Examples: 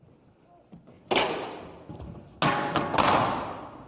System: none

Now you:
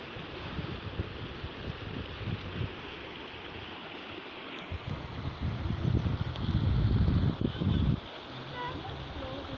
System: none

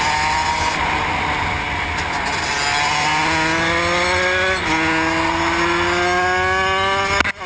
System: none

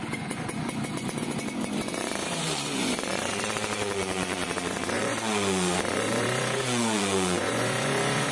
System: vocoder, Vocos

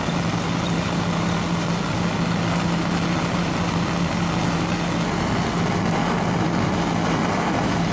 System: none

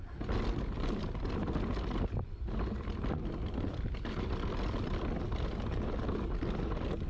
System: none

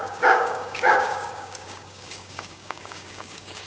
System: codec, DAC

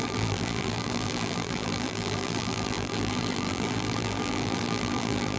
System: vocoder, BigVGAN v2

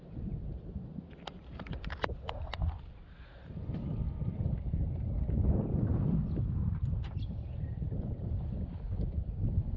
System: none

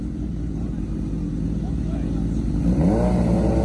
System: none